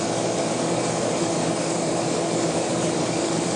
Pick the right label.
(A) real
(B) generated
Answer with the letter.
B